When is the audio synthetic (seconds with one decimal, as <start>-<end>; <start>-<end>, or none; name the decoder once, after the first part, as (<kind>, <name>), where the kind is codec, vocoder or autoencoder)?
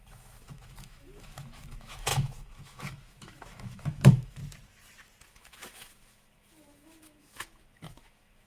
0.0-4.4 (autoencoder, DAC-VAE); 5.3-8.5